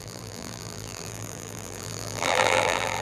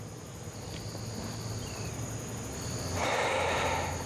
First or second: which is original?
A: second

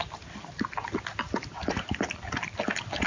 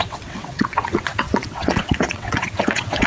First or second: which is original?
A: first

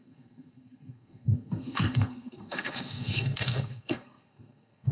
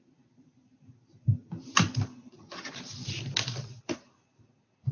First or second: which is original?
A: second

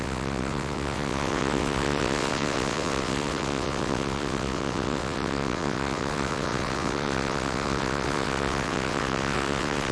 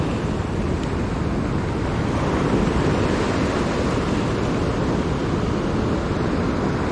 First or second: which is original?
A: second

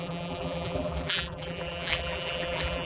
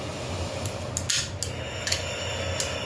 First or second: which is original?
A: second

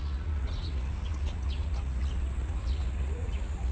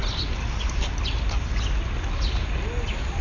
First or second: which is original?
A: second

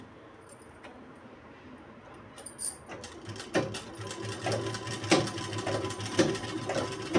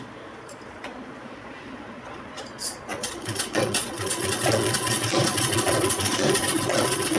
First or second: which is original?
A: first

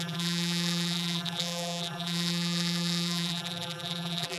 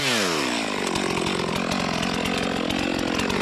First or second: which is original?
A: second